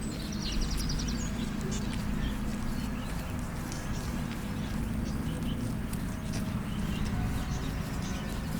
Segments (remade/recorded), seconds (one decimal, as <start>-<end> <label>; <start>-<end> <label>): 0.0-6.9 recorded; 6.9-7.5 remade; 7.5-8.6 recorded

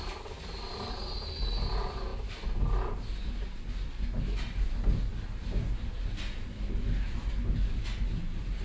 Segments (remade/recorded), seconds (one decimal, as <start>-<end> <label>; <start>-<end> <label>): 0.0-8.6 recorded